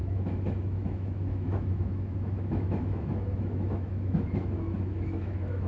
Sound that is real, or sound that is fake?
fake